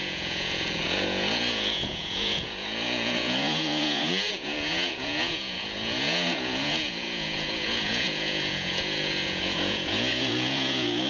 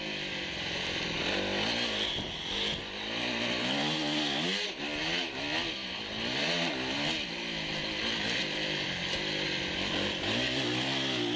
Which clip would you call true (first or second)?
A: second